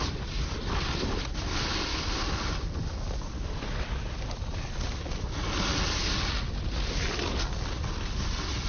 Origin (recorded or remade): recorded